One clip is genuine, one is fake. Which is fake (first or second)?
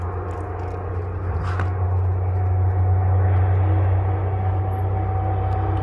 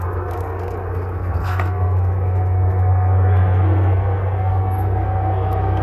second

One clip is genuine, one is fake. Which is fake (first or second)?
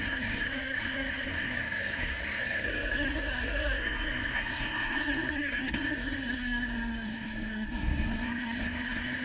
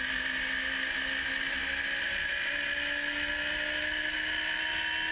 first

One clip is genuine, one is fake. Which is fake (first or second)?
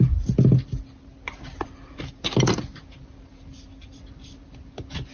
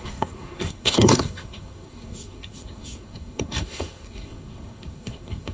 second